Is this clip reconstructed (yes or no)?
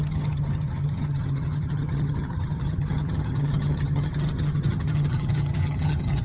yes